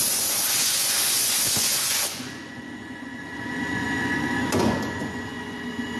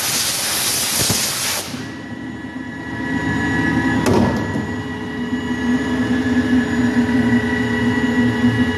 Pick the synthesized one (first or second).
first